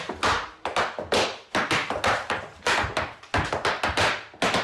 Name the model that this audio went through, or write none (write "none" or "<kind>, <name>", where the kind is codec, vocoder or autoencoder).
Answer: none